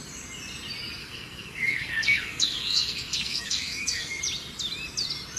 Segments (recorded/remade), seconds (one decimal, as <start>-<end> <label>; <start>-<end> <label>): 0.0-1.0 recorded; 1.0-4.2 remade; 4.2-5.4 recorded